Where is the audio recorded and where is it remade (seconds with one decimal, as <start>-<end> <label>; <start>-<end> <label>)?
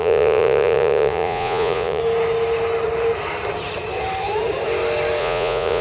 0.0-2.0 remade; 2.0-5.2 recorded; 5.2-5.8 remade